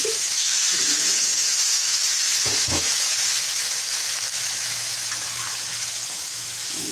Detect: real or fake fake